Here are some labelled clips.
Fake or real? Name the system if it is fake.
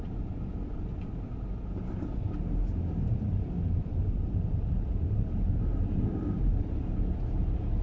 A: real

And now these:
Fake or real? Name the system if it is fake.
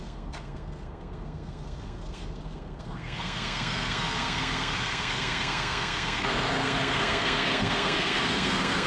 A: fake, codec, SNAC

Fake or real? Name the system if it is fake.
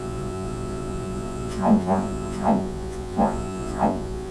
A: fake, vocoder, Vocos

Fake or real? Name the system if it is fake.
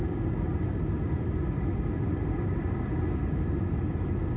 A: real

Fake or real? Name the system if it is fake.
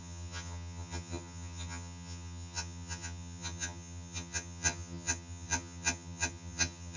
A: fake, vocoder, HiFi-GAN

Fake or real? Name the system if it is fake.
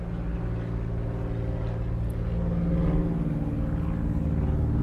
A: real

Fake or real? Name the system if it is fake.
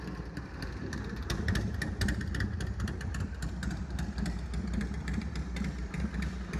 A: fake, vocoder, BigVGAN v2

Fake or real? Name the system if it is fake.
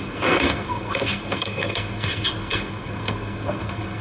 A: fake, codec, SNAC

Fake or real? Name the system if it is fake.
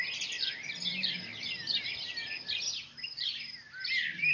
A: real